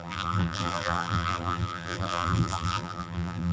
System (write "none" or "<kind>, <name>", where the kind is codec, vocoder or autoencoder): vocoder, BigVGAN v2